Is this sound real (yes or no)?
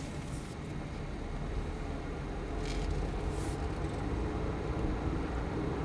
yes